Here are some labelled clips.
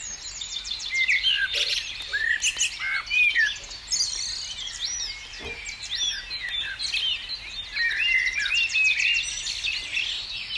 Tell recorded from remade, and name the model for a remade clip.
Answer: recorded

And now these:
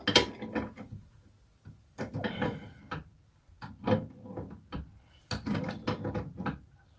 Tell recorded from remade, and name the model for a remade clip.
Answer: recorded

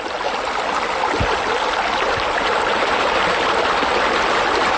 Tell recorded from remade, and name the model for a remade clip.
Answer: recorded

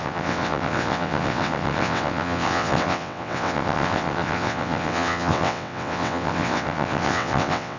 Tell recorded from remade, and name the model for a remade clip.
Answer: remade, vocoder, WaveNeXt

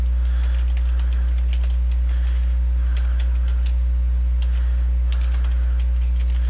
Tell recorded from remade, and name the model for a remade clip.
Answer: recorded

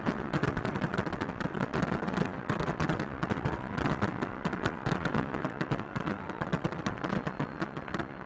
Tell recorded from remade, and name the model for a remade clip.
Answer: remade, vocoder, WaveNeXt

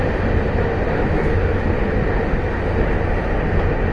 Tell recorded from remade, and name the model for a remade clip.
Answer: recorded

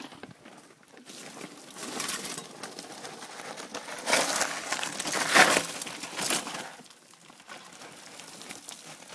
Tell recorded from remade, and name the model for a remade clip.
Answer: recorded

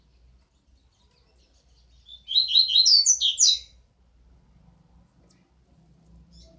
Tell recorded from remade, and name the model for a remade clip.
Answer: recorded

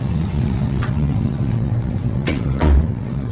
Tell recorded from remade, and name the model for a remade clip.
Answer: remade, vocoder, WaveNeXt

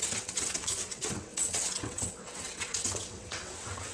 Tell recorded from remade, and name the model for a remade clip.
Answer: remade, vocoder, WaveNeXt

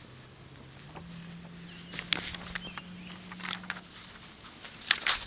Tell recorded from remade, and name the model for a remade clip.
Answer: recorded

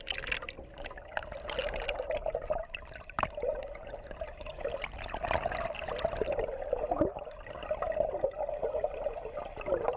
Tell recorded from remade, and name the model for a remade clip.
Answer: recorded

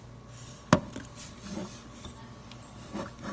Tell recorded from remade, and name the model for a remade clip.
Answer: recorded